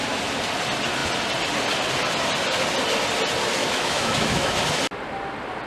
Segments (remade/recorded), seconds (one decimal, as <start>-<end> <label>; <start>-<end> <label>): 0.0-3.6 recorded; 3.6-4.6 remade; 4.6-5.7 recorded